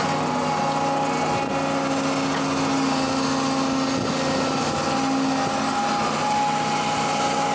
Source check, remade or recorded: recorded